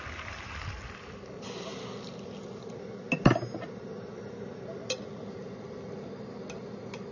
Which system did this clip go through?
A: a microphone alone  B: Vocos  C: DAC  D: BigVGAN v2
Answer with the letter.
A